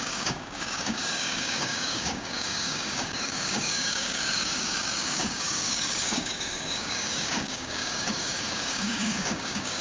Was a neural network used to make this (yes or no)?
yes